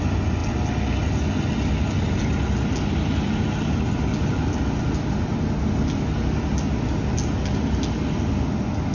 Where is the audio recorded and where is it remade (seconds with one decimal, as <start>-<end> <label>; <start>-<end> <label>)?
0.0-8.9 recorded